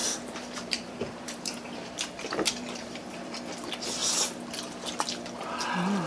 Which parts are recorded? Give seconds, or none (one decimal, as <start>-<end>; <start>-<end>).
3.4-6.1

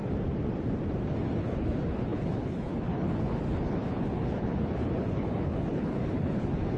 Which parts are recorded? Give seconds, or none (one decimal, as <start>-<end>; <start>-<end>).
0.0-1.4

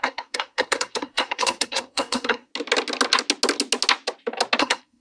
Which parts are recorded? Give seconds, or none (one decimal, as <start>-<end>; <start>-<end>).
2.5-4.6

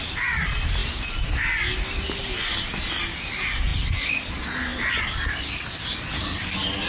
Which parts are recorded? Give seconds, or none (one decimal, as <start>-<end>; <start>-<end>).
0.0-6.9